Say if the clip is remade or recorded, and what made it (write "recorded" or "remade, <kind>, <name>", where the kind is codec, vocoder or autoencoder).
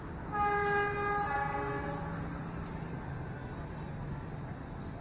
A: recorded